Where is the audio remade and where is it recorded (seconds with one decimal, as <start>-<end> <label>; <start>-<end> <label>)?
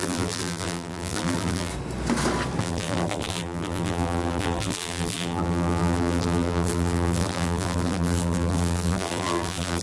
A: 0.0-1.7 remade; 1.7-2.6 recorded; 2.6-9.8 remade